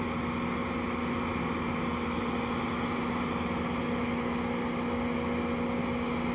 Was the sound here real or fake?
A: real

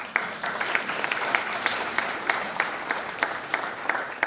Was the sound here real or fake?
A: fake